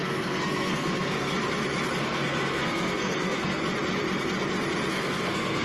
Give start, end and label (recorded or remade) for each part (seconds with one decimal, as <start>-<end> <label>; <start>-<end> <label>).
0.0-1.3 remade; 1.3-2.0 recorded; 2.0-3.6 remade; 3.6-4.9 recorded; 4.9-5.6 remade